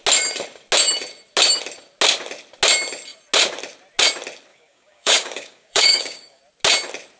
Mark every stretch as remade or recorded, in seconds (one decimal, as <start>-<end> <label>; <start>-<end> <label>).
0.0-4.5 recorded; 4.5-6.4 remade; 6.4-7.2 recorded